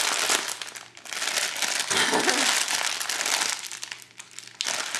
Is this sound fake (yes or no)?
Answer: no